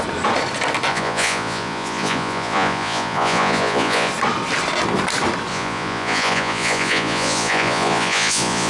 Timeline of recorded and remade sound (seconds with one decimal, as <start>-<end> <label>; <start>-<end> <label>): 0.0-0.9 recorded; 0.9-4.1 remade; 4.1-5.5 recorded; 5.5-8.7 remade

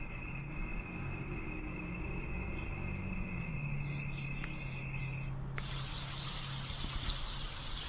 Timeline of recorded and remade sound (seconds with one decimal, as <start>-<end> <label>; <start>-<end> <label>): 0.0-7.9 recorded

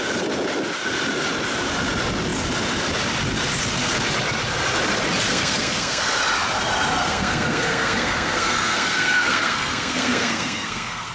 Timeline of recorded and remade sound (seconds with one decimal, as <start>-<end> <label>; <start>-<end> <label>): 0.0-5.3 recorded; 5.3-6.2 remade; 6.2-7.0 recorded; 7.0-11.1 remade

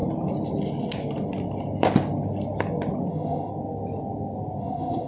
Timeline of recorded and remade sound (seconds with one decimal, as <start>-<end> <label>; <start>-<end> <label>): 0.0-3.1 recorded; 3.1-3.5 remade; 3.5-4.6 recorded; 4.6-5.1 remade

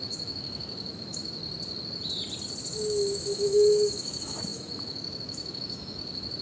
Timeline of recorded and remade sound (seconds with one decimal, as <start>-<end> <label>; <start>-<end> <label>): 0.0-1.4 remade; 1.4-2.6 recorded; 2.6-6.4 remade

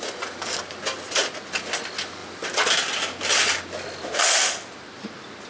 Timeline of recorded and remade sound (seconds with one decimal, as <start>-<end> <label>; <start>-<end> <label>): 0.0-5.5 recorded

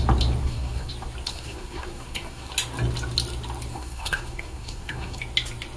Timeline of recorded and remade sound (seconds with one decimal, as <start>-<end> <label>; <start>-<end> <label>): 0.0-0.4 recorded; 0.4-0.9 remade; 0.9-1.3 recorded; 1.3-2.5 remade; 2.5-3.7 recorded; 3.7-5.2 remade; 5.2-5.8 recorded